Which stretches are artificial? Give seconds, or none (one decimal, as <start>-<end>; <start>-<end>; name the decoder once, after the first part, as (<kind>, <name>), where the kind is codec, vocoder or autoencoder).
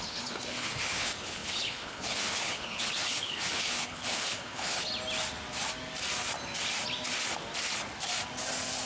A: 0.0-4.9 (codec, HILCodec)